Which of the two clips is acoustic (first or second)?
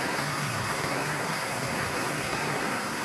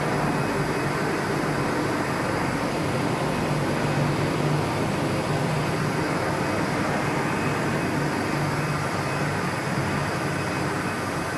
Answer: second